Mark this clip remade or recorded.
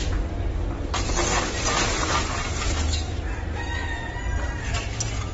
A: recorded